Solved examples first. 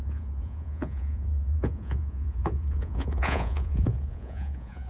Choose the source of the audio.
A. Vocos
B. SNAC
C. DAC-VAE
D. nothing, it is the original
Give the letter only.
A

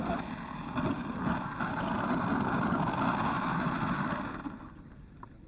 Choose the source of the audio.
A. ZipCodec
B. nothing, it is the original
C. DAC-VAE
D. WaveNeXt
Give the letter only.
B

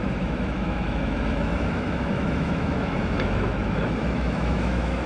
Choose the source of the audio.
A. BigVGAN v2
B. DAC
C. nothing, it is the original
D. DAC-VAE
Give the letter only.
D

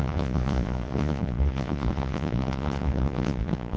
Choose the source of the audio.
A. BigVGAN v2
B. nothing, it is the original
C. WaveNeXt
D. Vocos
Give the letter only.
D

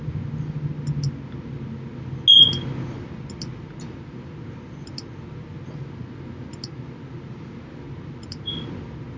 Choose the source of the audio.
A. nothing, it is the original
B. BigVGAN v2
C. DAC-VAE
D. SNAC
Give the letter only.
A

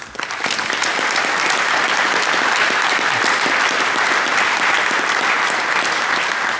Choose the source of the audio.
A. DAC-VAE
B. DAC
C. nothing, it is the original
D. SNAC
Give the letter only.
C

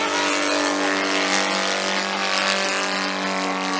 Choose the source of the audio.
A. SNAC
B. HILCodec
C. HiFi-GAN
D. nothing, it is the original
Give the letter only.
D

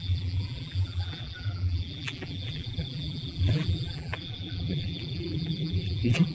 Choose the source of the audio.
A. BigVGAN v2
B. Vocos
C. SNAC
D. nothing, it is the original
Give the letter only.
A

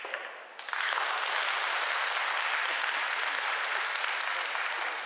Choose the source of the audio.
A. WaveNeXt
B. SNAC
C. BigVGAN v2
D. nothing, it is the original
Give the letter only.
D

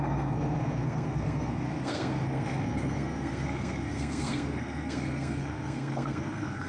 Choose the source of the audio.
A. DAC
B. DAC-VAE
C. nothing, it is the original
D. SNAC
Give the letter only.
D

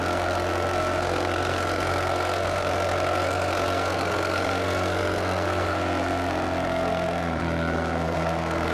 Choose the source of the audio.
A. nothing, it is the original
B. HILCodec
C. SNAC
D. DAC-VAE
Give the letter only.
C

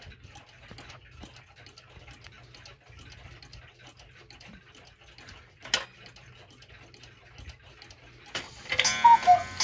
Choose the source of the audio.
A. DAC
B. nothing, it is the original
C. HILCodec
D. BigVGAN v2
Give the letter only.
B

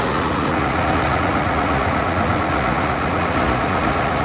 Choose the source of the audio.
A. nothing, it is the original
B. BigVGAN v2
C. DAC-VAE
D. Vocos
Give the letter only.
D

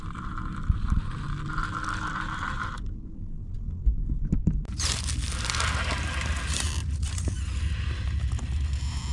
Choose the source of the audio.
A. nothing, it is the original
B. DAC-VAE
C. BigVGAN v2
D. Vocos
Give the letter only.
A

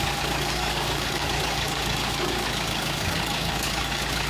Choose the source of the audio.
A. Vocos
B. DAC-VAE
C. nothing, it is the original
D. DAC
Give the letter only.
D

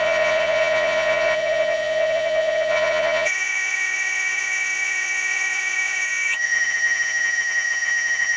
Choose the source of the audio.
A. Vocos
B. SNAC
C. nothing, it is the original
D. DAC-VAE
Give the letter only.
A